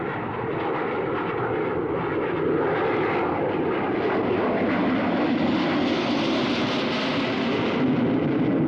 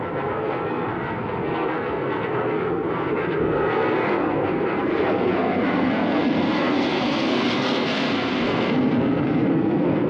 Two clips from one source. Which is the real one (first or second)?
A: first